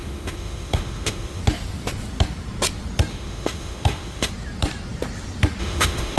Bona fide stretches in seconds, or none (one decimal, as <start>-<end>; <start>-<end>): 1.4-3.1; 4.3-5.6

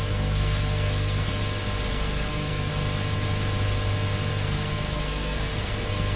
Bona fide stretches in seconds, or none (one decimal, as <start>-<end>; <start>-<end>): 1.3-1.9; 2.7-4.3

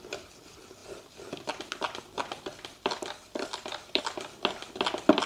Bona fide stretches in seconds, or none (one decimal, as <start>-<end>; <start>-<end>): 0.0-0.8; 4.0-5.3

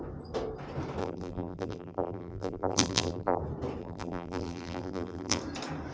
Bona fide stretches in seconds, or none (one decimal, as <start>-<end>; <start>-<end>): 0.0-1.0; 3.4-3.8; 5.4-5.9